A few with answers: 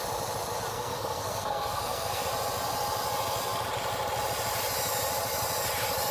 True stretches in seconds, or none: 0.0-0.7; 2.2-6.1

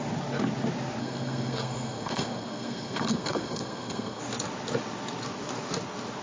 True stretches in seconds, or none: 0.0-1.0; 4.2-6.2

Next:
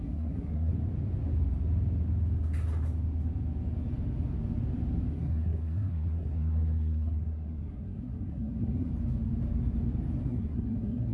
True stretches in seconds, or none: 0.7-5.1; 8.9-10.2